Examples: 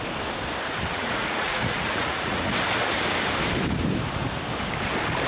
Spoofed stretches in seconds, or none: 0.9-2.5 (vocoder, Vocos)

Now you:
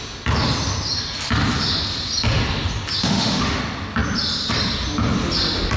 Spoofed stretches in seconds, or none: 3.0-3.6 (autoencoder, DAC-VAE)

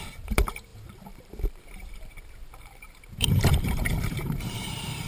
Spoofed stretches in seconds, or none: 0.0-5.1 (vocoder, BigVGAN v2)

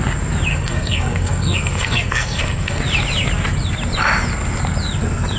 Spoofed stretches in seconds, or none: 0.5-2.8 (codec, SNAC)